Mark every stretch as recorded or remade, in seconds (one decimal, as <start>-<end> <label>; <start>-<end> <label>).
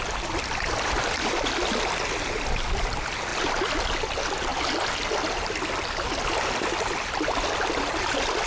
0.0-8.5 recorded